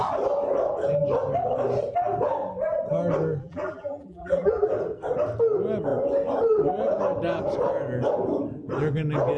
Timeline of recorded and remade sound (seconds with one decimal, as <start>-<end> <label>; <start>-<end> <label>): 0.0-3.4 recorded; 3.4-4.7 remade; 4.7-9.4 recorded